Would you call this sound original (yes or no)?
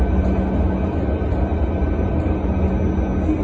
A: yes